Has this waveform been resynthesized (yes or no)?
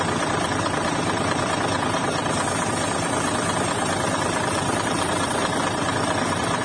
yes